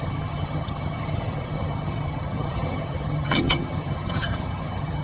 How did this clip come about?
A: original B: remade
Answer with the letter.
B